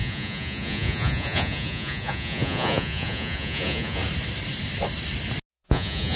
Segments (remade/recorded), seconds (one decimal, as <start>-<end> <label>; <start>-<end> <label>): 0.0-4.0 remade; 4.0-5.5 recorded; 5.5-6.2 remade